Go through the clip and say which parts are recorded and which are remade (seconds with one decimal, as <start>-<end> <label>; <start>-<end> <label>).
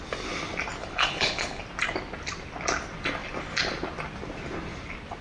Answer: 0.0-0.8 recorded; 0.8-1.6 remade; 1.6-5.2 recorded